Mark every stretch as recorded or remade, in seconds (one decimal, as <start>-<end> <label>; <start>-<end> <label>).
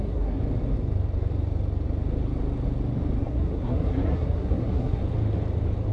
0.0-0.4 remade; 0.4-3.2 recorded; 3.2-5.0 remade; 5.0-5.9 recorded